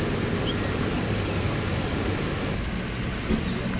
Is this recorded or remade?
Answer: recorded